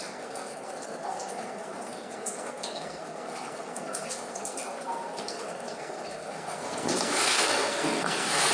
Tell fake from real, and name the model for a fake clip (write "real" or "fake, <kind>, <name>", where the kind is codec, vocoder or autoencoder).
fake, codec, SNAC